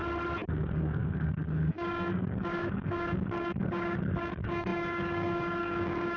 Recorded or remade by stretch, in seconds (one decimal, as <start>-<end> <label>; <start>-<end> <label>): 0.0-0.5 recorded; 0.5-6.2 remade